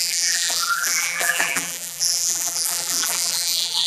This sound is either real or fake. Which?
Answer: fake